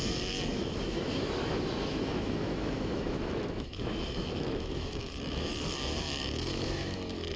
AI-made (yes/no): yes